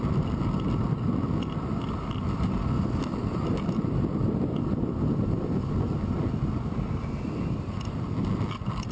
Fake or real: real